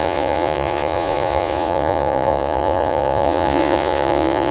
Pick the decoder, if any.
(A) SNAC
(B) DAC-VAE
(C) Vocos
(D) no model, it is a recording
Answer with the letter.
C